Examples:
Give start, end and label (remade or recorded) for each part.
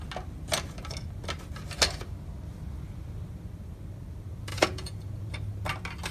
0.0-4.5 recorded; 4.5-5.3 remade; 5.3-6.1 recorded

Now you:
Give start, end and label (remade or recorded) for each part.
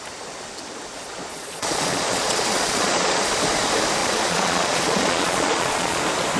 0.0-1.3 recorded; 1.3-3.3 remade; 3.3-4.0 recorded; 4.0-6.0 remade; 6.0-6.4 recorded